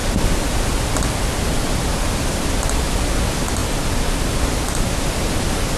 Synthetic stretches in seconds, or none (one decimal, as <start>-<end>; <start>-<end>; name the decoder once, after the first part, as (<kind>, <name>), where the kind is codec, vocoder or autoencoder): none